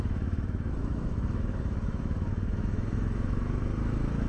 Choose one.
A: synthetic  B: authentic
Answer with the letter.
A